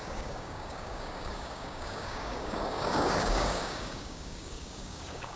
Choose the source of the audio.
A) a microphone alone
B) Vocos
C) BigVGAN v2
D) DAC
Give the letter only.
D